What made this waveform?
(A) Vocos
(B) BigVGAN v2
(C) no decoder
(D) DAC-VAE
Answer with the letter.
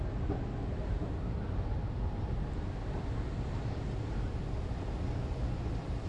C